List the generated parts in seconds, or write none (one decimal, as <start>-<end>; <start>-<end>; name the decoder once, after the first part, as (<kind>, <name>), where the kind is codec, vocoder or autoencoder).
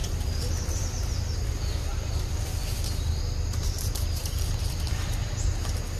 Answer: 0.0-0.8 (vocoder, BigVGAN v2); 1.9-5.5